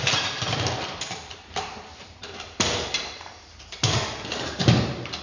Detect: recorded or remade remade